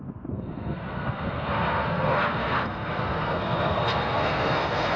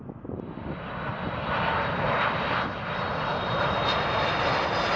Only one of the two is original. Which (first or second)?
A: second